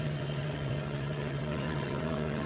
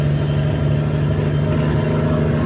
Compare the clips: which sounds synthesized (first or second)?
first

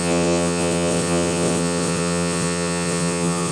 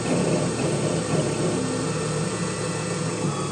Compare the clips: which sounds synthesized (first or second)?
first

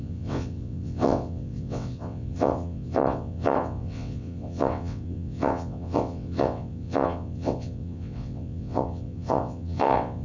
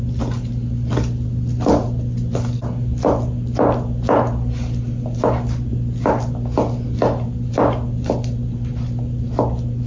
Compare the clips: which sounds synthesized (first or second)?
first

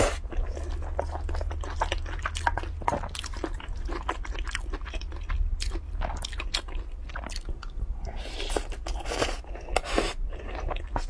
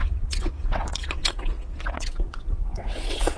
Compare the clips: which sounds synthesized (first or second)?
second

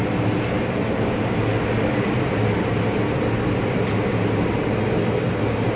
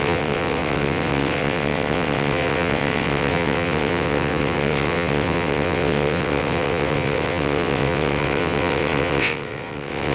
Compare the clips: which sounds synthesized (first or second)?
second